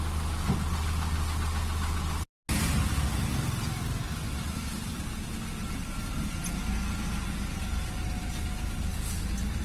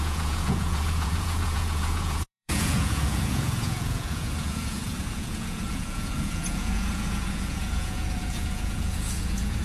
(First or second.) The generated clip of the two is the second